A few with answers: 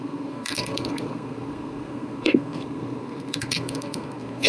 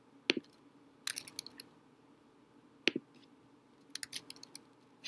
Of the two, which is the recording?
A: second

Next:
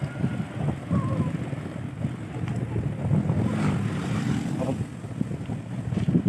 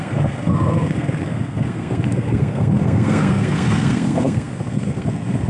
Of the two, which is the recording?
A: first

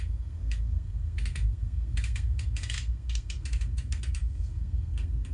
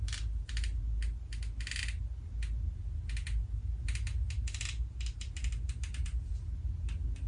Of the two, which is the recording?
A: second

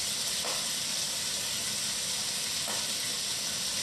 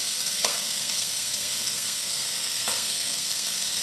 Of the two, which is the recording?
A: first